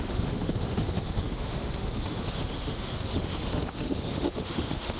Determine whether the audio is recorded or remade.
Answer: remade